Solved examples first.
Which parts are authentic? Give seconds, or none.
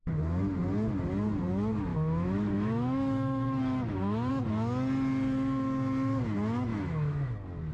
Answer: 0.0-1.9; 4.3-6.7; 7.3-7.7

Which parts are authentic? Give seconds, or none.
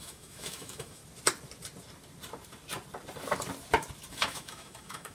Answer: 1.0-4.1